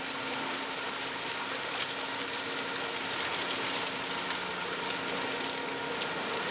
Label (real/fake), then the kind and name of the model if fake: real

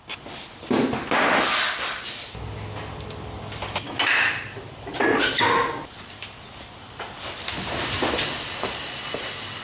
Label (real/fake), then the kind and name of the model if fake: real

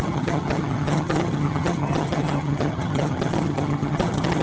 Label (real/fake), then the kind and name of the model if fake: fake, vocoder, HiFi-GAN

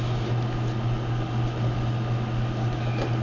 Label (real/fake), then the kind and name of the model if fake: real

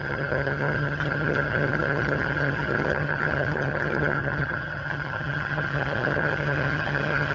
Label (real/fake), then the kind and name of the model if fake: fake, vocoder, HiFi-GAN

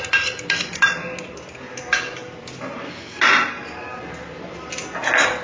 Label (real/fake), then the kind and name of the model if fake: real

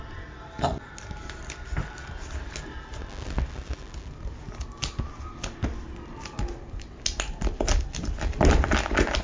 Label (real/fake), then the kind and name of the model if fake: real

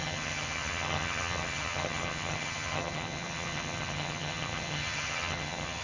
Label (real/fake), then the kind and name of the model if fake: fake, vocoder, HiFi-GAN